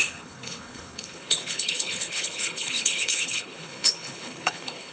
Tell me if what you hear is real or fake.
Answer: fake